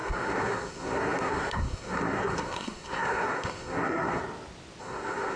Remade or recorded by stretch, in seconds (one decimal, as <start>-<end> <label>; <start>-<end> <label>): 0.0-4.2 remade; 4.2-4.8 recorded; 4.8-5.4 remade